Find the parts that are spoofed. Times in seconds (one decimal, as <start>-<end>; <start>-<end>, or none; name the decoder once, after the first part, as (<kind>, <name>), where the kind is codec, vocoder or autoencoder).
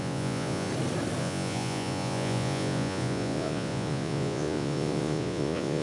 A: 0.0-0.7 (vocoder, Vocos); 1.2-5.8